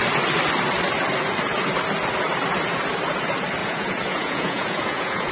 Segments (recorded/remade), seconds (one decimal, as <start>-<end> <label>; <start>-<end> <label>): 0.0-3.6 recorded; 3.6-5.3 remade